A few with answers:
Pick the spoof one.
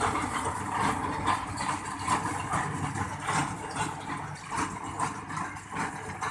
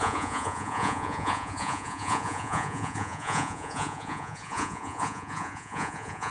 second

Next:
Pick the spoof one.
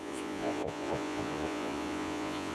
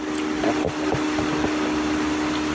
first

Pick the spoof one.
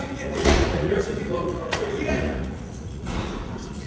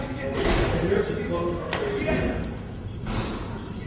first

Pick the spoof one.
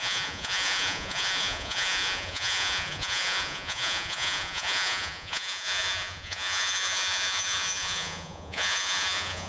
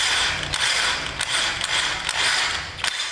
first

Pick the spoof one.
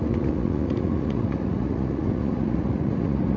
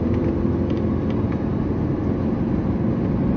first